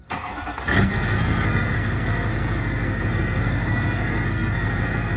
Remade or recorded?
remade